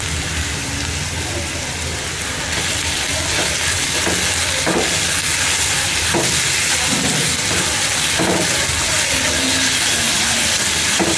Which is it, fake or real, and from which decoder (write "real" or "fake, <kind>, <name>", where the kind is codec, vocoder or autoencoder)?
real